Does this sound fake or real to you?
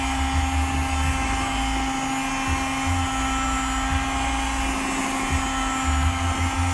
real